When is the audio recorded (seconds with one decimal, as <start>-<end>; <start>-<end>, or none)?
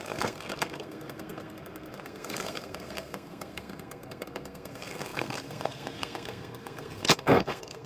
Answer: none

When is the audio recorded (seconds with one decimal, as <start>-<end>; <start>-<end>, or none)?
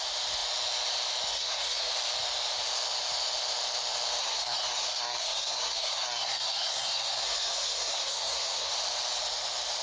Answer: 0.0-1.3; 1.9-4.2; 8.7-9.8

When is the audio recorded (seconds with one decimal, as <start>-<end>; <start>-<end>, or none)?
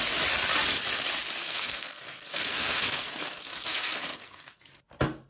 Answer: 0.0-1.4; 4.6-5.3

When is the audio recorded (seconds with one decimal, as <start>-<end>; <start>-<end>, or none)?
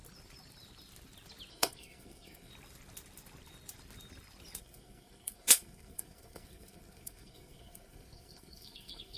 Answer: 0.0-1.5; 2.5-4.6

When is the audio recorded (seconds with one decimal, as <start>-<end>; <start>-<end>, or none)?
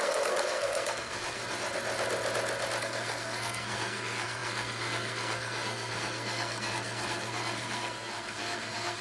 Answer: 1.4-2.8